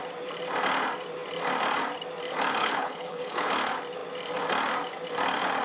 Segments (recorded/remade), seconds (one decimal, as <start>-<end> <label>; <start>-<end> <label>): 0.0-2.6 recorded; 2.6-3.5 remade; 3.5-5.6 recorded